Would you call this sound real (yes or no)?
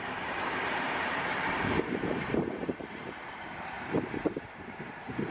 no